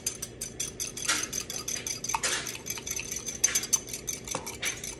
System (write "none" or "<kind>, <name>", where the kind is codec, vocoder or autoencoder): none